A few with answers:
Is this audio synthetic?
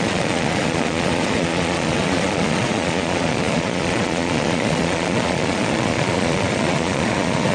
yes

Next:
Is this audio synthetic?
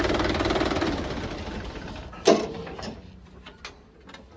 no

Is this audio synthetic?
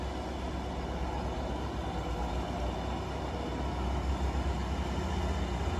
no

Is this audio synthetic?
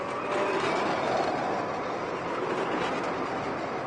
no